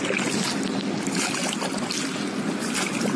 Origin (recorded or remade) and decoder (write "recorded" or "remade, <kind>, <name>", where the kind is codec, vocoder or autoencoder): recorded